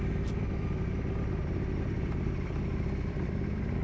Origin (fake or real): fake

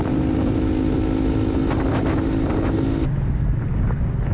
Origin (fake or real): real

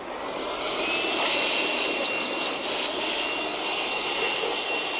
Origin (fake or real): real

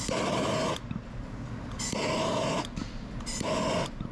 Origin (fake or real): real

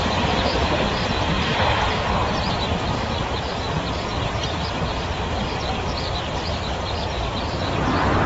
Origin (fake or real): fake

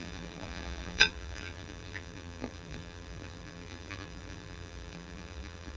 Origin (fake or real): fake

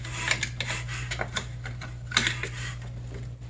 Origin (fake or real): fake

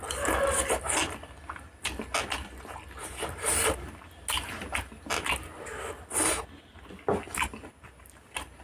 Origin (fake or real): real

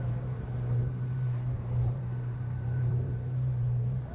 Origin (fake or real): fake